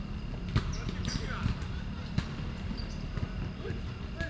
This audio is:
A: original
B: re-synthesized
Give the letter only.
A